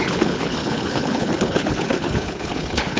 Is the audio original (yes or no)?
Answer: no